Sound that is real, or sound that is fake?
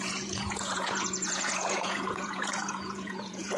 fake